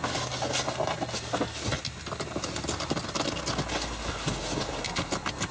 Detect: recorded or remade recorded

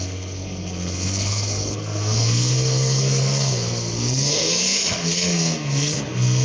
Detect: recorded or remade remade